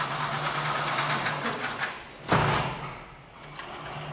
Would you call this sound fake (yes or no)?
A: no